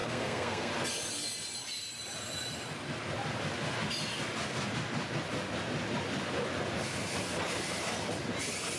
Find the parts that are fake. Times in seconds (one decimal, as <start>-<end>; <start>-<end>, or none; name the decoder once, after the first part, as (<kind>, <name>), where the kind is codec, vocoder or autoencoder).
0.0-0.7 (codec, SNAC)